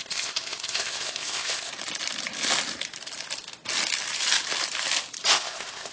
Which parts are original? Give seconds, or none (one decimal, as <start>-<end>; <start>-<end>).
1.7-5.2